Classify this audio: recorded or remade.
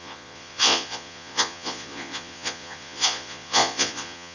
remade